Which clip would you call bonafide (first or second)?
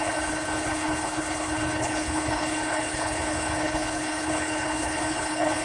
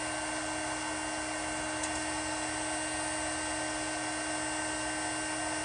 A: second